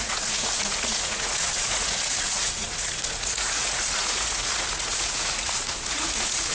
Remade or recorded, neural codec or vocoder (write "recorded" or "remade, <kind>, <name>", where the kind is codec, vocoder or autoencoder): remade, vocoder, Vocos